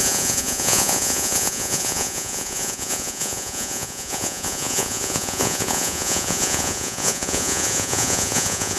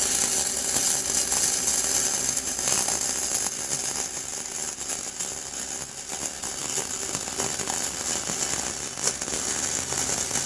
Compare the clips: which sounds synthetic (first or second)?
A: first